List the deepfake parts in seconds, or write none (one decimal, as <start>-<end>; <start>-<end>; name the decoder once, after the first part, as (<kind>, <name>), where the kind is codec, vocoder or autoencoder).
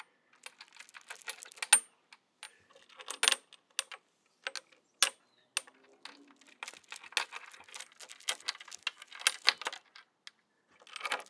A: none